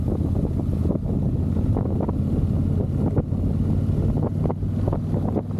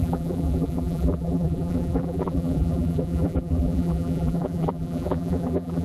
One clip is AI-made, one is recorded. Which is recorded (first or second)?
first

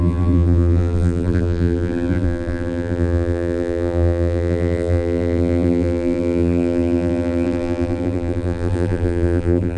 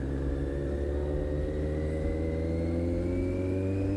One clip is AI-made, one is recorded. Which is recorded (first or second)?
second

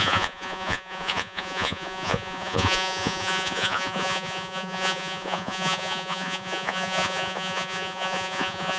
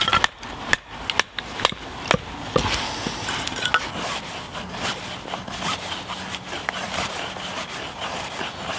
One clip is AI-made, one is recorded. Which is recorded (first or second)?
second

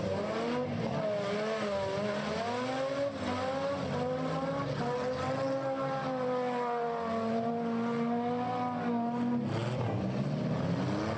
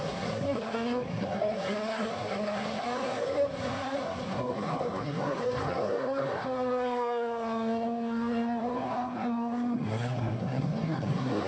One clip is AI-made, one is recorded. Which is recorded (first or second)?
first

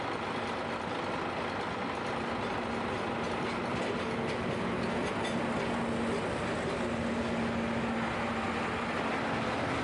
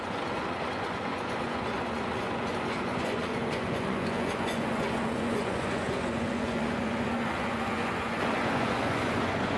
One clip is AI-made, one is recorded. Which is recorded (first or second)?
first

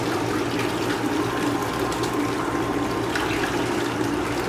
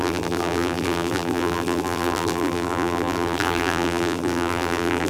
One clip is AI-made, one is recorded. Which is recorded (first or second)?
first